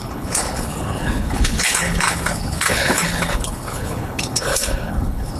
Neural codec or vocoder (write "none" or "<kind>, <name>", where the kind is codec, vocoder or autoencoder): codec, HILCodec